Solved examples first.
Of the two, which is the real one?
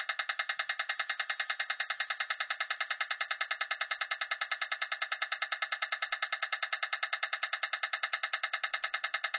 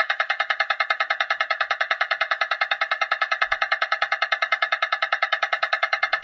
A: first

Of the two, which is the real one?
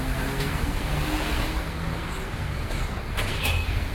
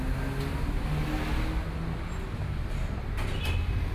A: second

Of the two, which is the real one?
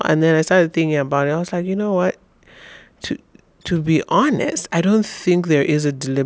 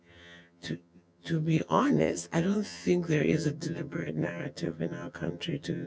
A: first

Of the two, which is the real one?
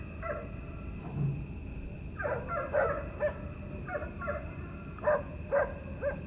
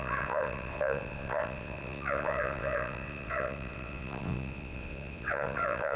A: first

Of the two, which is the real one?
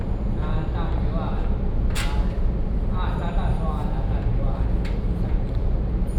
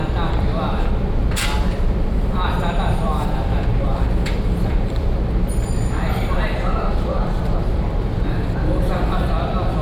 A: first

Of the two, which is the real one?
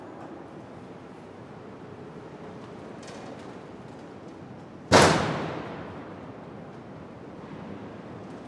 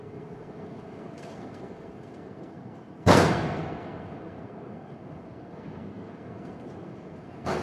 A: first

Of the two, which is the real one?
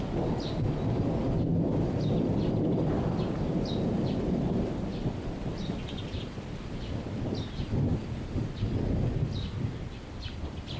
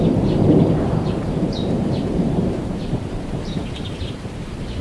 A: first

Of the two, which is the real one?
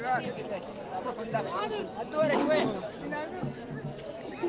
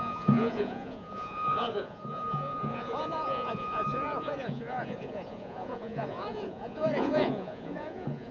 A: first